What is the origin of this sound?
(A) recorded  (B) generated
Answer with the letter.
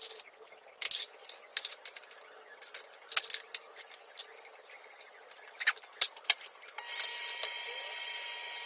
A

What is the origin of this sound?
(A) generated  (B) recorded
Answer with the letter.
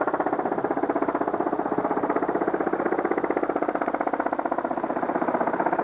A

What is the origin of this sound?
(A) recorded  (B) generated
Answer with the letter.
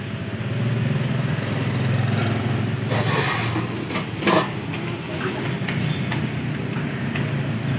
A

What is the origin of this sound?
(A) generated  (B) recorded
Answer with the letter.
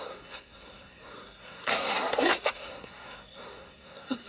A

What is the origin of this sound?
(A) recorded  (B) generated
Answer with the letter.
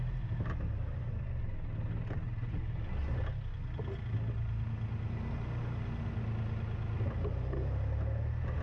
A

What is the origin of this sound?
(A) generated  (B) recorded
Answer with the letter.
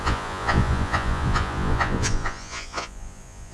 A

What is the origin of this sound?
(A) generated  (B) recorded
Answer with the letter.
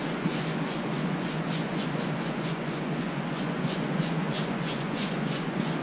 A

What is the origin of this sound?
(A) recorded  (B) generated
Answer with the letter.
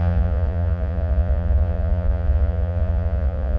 B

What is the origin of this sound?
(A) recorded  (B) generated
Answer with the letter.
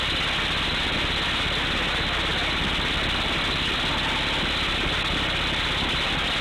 A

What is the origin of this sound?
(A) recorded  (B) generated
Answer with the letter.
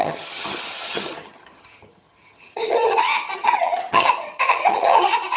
B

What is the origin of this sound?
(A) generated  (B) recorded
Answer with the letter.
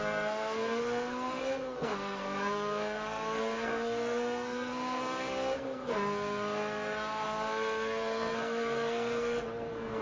A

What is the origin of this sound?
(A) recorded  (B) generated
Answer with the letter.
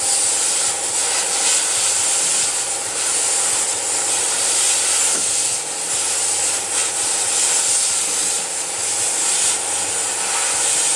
A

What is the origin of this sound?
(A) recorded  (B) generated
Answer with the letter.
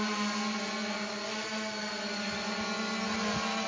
A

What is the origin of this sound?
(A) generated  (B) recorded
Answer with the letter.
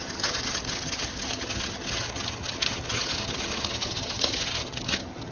A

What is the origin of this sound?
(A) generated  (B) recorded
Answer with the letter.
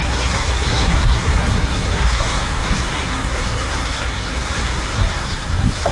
A